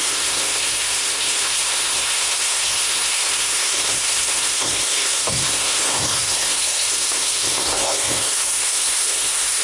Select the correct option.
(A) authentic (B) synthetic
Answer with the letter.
B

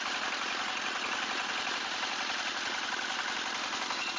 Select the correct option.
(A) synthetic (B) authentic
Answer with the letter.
B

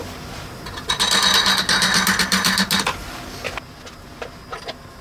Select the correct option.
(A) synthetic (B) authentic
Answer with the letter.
B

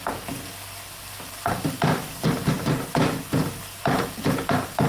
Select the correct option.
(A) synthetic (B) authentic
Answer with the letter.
B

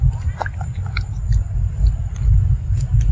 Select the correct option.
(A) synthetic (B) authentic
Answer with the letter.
B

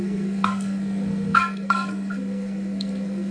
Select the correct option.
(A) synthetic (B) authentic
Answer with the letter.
A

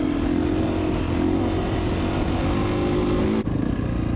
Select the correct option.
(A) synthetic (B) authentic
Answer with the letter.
B